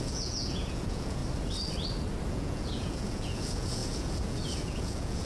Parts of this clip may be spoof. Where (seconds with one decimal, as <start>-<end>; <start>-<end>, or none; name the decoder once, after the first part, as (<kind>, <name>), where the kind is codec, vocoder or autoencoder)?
0.0-1.2 (vocoder, Vocos); 2.3-5.3